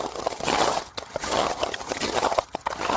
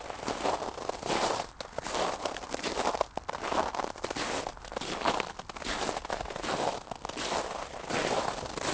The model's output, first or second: first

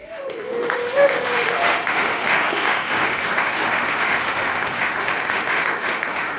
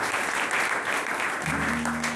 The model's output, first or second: first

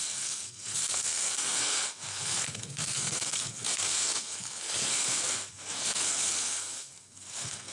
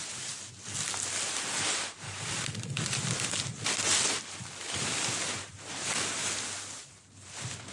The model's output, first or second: first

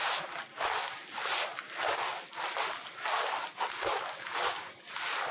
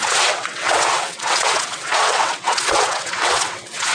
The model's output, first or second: second